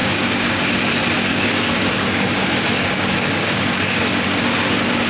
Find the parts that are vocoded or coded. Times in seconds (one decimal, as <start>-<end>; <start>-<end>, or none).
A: 0.0-0.7; 1.3-4.4